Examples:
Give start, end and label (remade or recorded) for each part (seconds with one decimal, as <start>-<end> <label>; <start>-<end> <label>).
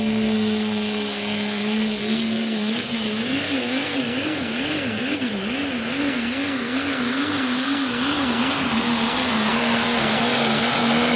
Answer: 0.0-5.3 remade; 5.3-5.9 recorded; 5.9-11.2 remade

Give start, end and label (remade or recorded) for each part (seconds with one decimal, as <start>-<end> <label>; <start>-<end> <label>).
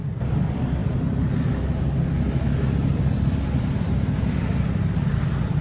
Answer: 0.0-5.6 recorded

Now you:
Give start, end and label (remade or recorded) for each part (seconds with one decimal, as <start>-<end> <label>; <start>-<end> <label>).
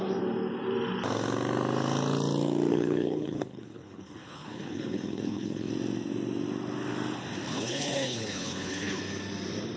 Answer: 0.0-2.7 recorded; 2.7-5.7 remade; 5.7-7.5 recorded; 7.5-9.0 remade; 9.0-9.8 recorded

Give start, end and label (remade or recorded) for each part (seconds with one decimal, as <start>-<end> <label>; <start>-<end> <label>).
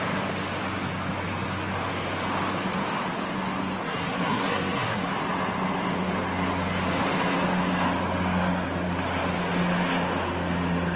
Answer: 0.0-3.8 recorded; 3.8-5.1 remade; 5.1-11.0 recorded